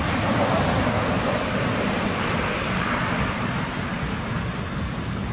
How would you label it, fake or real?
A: real